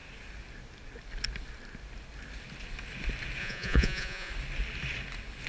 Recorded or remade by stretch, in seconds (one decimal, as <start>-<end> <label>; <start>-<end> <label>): 0.0-3.4 recorded; 3.4-4.3 remade; 4.3-5.5 recorded